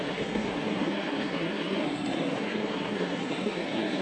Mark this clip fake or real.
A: fake